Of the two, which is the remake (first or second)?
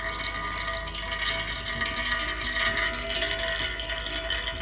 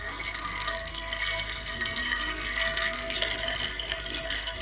second